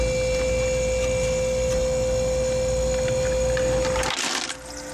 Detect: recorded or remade recorded